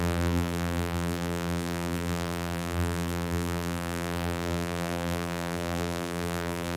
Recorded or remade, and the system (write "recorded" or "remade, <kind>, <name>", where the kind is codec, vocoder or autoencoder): remade, vocoder, BigVGAN v2